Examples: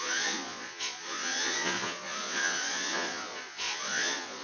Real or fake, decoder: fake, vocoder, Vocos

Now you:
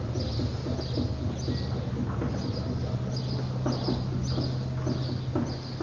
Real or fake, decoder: real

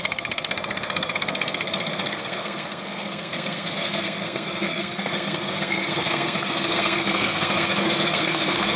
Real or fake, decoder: fake, codec, SNAC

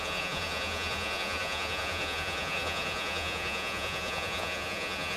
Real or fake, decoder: fake, vocoder, Vocos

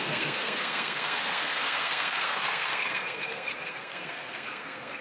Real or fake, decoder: fake, codec, SNAC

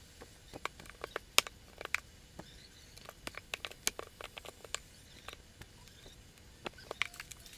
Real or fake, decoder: real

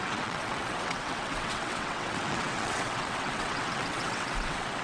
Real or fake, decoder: fake, vocoder, WaveNeXt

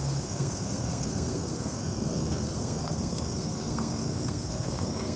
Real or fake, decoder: fake, codec, SNAC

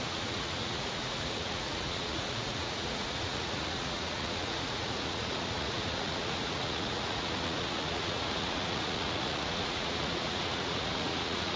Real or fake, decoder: fake, vocoder, Vocos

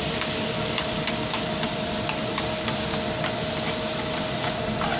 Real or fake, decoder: real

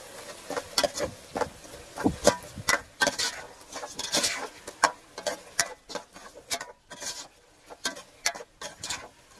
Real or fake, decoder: real